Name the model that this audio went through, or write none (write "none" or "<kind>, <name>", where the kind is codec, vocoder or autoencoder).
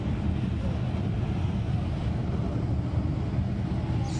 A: none